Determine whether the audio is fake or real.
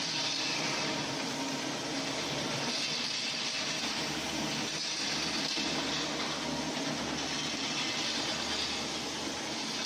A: real